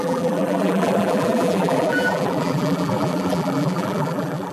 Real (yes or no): no